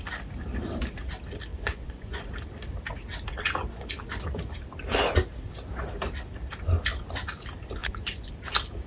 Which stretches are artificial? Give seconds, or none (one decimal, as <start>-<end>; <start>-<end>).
1.5-2.2; 7.8-8.3